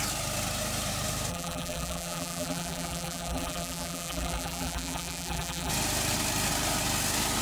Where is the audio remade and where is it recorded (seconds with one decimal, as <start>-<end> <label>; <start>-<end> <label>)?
0.0-1.3 recorded; 1.3-5.7 remade; 5.7-7.4 recorded